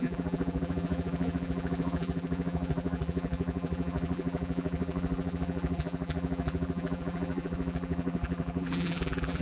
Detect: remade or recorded remade